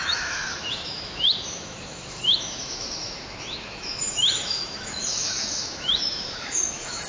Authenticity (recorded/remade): remade